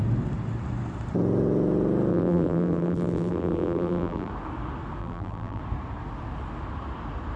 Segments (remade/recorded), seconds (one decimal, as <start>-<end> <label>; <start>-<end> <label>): 0.0-2.1 recorded; 2.1-4.3 remade; 4.3-5.0 recorded; 5.0-5.6 remade; 5.6-7.4 recorded